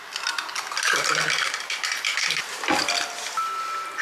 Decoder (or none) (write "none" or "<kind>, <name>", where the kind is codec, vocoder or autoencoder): none